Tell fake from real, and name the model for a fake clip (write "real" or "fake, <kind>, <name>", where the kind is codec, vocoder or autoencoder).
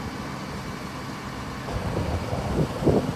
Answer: real